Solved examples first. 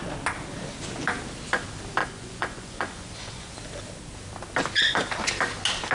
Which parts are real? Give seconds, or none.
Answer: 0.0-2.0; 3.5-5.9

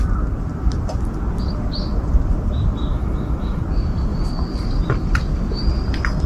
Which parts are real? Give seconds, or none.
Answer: 0.0-2.9; 3.6-6.3

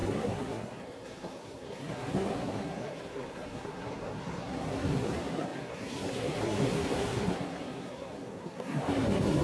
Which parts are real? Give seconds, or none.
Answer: none